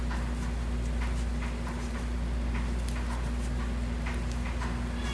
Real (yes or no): yes